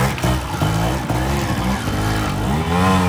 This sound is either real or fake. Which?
real